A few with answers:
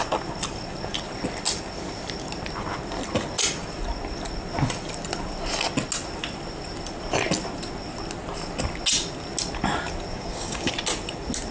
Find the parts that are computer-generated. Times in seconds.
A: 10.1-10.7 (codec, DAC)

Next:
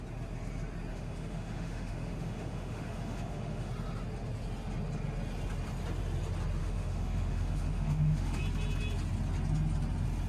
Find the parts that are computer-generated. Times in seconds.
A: 0.9-3.7 (autoencoder, DAC-VAE); 6.6-8.4

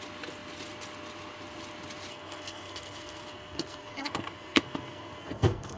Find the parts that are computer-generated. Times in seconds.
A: 2.1-5.8 (codec, SNAC)

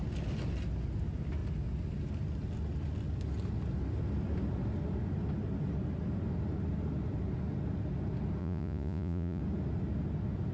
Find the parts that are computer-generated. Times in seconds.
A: 8.4-9.4 (vocoder, Vocos)

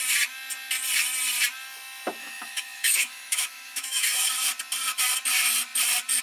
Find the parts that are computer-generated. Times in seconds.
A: 2.2-4.3 (autoencoder, DAC-VAE)

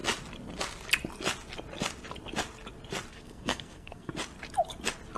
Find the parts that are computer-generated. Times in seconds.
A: 3.1-4.1 (codec, SNAC)

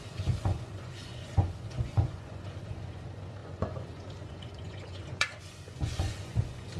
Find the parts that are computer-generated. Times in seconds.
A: 0.0-6.8 (vocoder, Vocos)

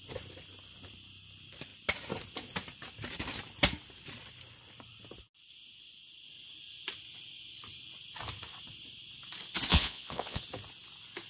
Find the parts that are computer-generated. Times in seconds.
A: 9.7-10.4 (vocoder, Vocos)